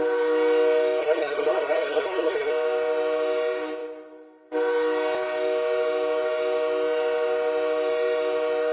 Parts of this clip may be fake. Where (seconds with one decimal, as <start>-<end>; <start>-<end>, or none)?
1.0-2.5